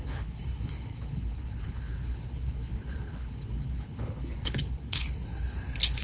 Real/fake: fake